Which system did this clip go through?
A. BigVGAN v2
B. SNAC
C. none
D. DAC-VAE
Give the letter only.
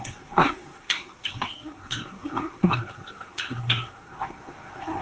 B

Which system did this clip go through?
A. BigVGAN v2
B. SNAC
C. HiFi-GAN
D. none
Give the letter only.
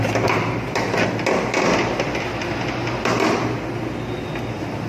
D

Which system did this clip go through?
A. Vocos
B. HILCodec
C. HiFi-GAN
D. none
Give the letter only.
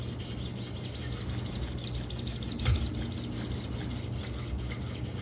D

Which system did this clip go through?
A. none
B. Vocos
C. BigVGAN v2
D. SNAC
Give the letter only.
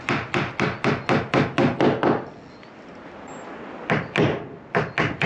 A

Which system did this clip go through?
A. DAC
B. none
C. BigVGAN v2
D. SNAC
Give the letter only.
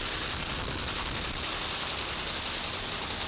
B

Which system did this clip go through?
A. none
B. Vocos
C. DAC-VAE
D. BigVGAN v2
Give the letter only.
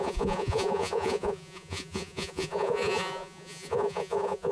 B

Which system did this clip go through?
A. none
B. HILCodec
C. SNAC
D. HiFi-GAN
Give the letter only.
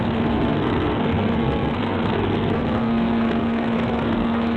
C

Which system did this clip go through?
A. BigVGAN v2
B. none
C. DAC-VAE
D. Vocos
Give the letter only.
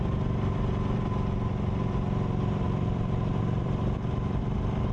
A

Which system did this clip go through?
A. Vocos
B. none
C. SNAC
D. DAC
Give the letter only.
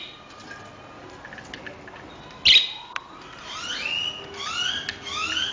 B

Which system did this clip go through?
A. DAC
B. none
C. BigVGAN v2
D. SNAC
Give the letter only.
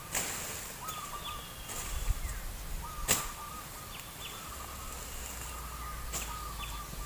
B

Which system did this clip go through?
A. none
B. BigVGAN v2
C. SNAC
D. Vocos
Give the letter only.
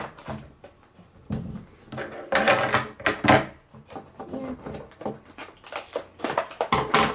A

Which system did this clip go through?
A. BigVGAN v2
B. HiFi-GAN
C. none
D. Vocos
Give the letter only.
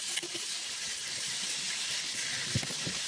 C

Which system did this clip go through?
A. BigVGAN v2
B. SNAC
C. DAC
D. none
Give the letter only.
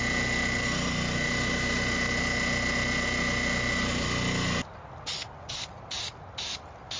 D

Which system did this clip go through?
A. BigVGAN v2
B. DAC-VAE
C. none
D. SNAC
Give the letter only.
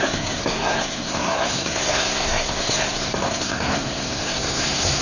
D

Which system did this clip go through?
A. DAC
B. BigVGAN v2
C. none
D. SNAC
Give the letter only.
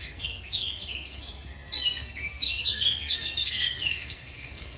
D